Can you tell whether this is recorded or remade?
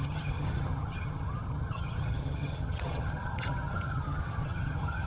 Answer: remade